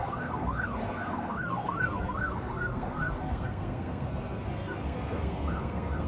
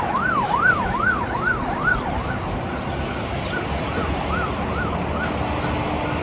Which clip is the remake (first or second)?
first